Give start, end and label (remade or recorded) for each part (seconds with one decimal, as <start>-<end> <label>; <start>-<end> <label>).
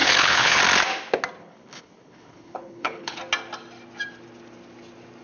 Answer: 0.0-0.6 remade; 0.6-1.4 recorded; 1.4-3.2 remade; 3.2-5.2 recorded